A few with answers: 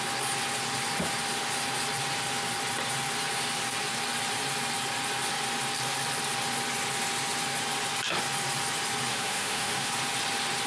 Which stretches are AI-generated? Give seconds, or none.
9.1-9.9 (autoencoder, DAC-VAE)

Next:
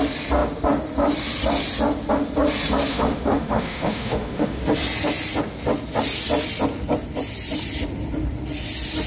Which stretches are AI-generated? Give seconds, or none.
2.9-4.6 (autoencoder, DAC-VAE)

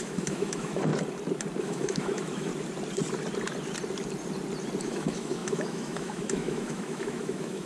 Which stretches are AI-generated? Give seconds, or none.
0.0-0.9 (autoencoder, DAC-VAE); 1.6-2.5; 4.8-7.7

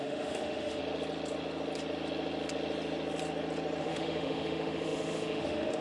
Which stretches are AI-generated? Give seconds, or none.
0.0-0.8 (autoencoder, DAC-VAE); 3.8-5.8

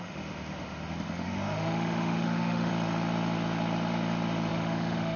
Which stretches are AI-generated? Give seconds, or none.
0.0-2.7 (autoencoder, DAC-VAE); 4.5-5.2